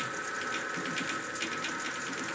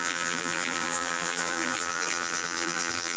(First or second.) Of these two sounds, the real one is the first